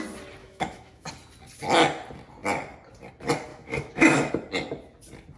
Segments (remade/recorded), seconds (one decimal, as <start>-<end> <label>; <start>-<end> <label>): 0.0-0.4 recorded; 0.4-1.1 remade; 1.1-3.5 recorded; 3.5-4.3 remade; 4.3-5.4 recorded